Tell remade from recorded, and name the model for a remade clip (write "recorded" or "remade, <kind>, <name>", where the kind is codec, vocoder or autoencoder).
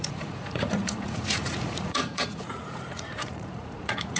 remade, vocoder, Vocos